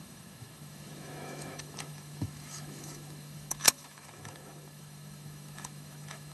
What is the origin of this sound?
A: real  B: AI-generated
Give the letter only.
B